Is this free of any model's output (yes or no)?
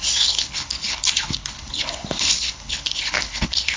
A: no